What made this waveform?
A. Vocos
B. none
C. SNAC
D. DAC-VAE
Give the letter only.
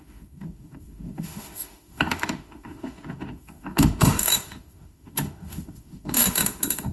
D